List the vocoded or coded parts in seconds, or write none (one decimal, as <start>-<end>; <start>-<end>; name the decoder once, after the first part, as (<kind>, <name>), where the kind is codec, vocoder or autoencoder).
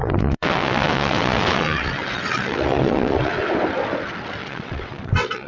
0.0-3.3 (vocoder, WaveNeXt); 4.4-5.5